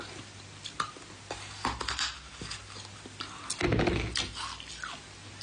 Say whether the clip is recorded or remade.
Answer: recorded